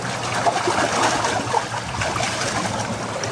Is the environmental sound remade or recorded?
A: recorded